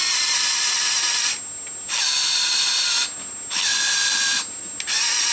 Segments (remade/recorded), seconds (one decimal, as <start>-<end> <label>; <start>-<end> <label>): 0.0-5.3 recorded